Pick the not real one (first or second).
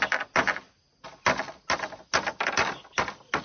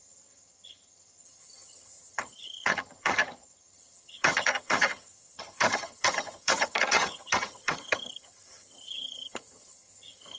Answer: second